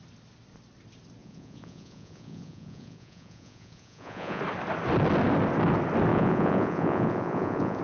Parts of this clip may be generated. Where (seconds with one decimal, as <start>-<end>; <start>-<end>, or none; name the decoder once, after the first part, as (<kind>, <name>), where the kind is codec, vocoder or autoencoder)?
1.2-4.4 (vocoder, Vocos); 6.1-7.8